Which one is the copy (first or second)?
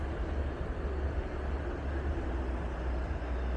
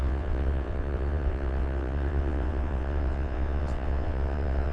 second